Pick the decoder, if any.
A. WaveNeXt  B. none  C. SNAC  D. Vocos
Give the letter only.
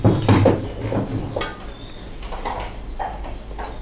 B